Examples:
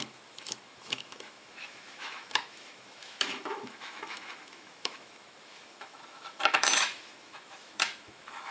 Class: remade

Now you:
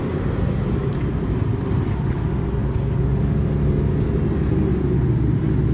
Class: recorded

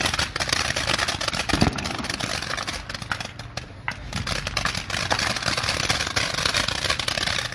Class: recorded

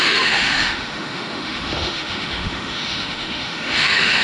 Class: remade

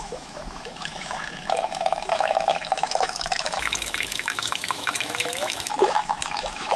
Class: remade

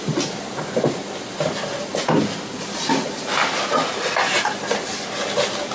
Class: recorded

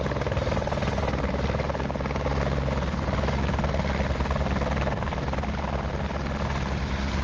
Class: recorded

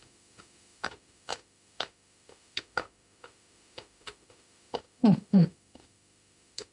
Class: remade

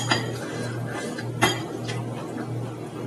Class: recorded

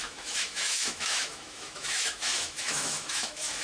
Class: remade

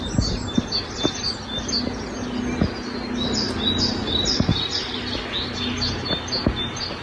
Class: recorded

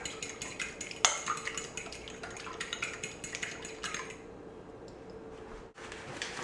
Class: recorded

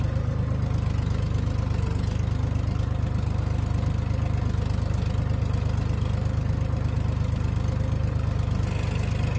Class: recorded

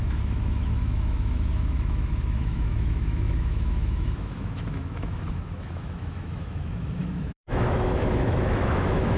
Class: remade